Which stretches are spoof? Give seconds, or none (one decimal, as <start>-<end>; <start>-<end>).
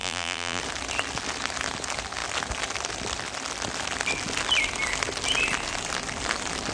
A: 0.0-0.6